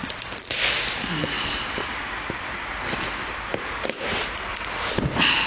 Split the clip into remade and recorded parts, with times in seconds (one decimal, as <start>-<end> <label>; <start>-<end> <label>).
0.0-5.5 recorded